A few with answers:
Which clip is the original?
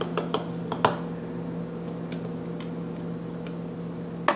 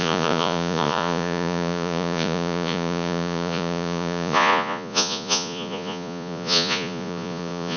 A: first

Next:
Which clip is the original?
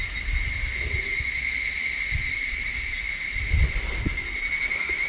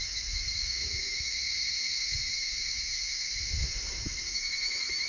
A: first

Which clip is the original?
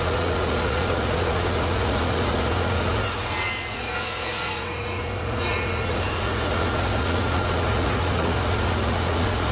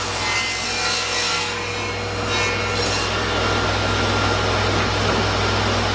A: second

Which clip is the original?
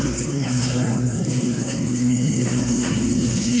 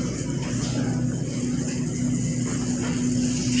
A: second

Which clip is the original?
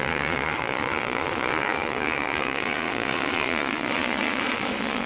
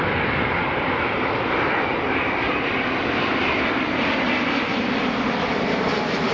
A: second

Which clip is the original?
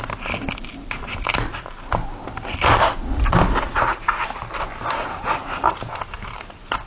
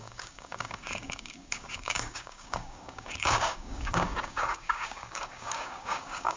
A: first